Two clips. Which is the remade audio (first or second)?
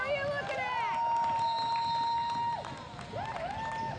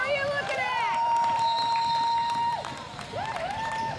second